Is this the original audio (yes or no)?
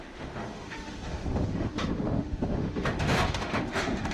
no